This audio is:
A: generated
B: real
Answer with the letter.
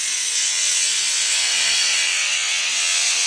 A